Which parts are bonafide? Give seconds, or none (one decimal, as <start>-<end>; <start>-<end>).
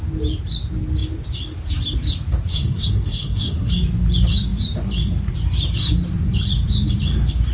0.0-2.5; 3.7-7.5